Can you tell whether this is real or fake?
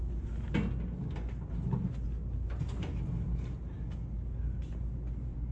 real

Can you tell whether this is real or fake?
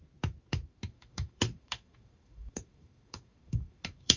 fake